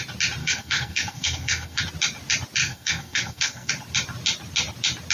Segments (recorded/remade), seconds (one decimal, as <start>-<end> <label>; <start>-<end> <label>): 0.0-0.4 recorded; 0.4-1.8 remade; 1.8-2.6 recorded; 2.6-3.7 remade; 3.7-5.1 recorded